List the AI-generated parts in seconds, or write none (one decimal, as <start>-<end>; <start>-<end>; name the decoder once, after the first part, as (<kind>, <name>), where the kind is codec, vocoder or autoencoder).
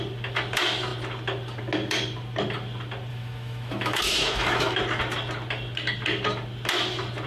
3.1-4.8 (autoencoder, DAC-VAE)